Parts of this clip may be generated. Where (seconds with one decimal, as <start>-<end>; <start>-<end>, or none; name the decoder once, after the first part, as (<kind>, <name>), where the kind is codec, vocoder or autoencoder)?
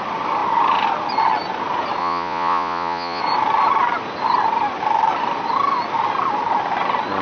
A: 2.0-3.2 (vocoder, Vocos)